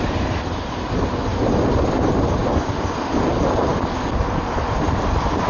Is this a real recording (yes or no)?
yes